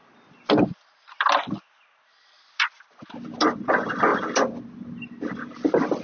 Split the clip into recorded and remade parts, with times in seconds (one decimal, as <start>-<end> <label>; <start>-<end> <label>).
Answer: 0.0-6.0 recorded